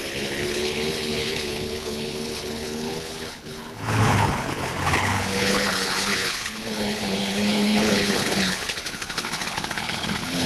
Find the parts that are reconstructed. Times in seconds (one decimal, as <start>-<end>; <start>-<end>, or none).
0.0-10.5